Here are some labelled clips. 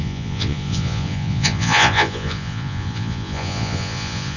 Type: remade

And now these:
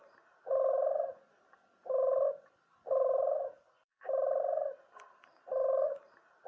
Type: recorded